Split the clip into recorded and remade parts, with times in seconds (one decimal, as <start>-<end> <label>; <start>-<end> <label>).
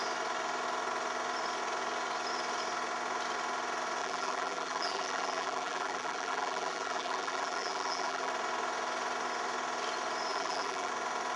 0.0-4.0 recorded; 4.0-8.3 remade; 8.3-10.3 recorded; 10.3-10.9 remade; 10.9-11.4 recorded